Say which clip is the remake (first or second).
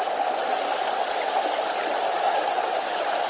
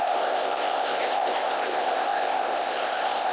second